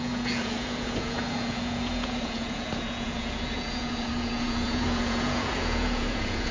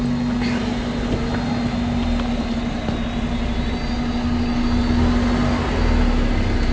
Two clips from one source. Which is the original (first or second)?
second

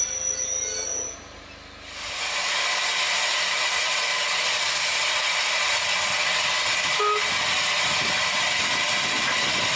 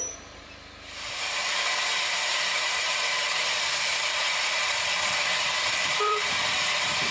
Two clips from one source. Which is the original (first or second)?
first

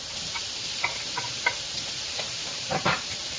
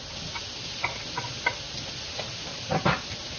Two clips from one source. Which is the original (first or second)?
second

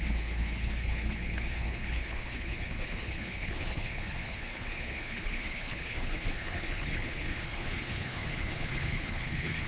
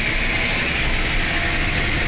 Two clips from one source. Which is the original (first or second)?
second